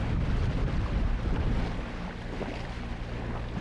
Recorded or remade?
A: recorded